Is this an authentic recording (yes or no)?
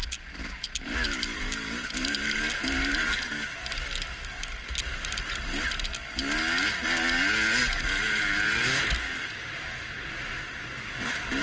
yes